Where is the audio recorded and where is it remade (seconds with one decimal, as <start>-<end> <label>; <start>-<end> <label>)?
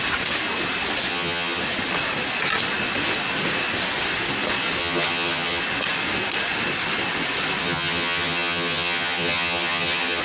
0.0-1.1 recorded; 1.1-1.6 remade; 1.6-4.8 recorded; 4.8-5.6 remade; 5.6-7.6 recorded; 7.6-10.2 remade